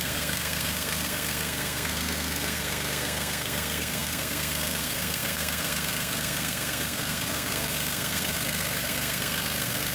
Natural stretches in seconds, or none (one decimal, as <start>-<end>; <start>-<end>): none